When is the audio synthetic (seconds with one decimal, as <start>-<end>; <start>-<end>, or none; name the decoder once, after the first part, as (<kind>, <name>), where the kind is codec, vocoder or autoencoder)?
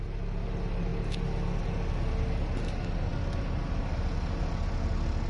none